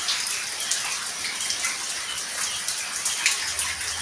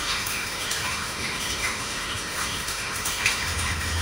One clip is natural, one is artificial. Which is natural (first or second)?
first